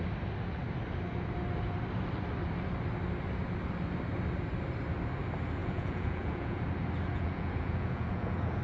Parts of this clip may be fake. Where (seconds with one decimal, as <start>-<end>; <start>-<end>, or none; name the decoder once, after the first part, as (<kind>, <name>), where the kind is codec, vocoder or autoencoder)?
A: 5.6-6.6 (vocoder, Vocos); 7.1-8.6